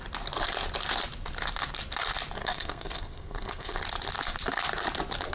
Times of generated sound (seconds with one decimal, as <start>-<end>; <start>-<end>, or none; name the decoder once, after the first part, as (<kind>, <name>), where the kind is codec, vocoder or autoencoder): 2.4-3.8 (codec, SNAC)